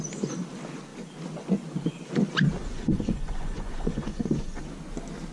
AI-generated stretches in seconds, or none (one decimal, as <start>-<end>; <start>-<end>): 2.6-4.6